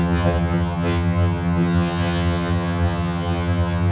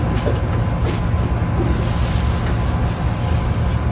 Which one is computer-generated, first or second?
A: first